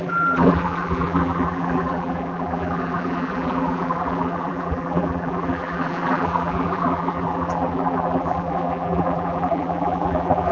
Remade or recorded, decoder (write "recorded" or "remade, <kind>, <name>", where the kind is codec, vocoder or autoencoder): remade, vocoder, BigVGAN v2